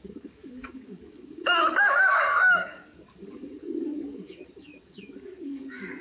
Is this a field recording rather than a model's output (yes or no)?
no